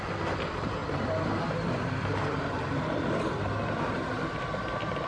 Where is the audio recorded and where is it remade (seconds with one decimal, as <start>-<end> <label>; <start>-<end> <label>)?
0.0-5.1 remade